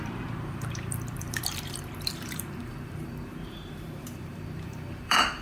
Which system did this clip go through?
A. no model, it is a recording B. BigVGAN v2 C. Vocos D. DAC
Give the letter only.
B